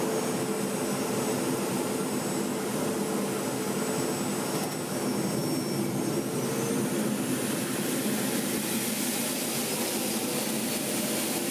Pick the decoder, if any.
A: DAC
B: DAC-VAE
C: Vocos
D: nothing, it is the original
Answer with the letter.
D